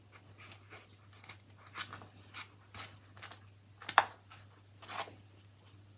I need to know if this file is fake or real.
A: real